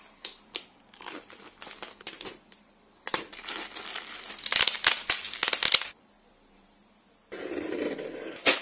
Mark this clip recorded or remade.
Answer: recorded